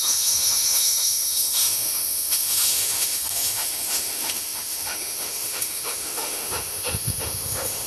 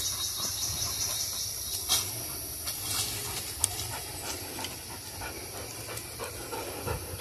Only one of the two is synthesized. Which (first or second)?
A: first